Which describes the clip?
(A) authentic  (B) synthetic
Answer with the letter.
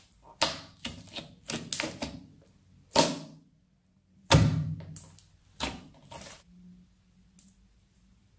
A